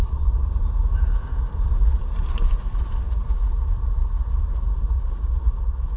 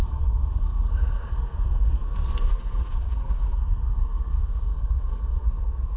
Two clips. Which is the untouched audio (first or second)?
first